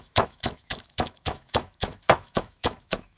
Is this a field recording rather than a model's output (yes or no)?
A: no